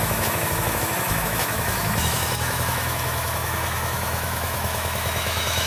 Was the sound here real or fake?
fake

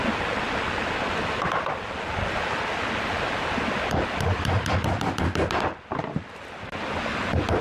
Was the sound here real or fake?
real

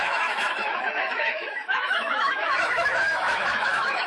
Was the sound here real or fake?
fake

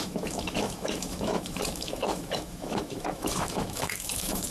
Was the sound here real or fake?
fake